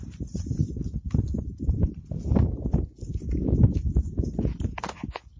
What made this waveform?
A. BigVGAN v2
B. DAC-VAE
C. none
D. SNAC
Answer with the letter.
C